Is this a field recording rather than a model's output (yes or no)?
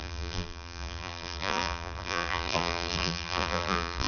no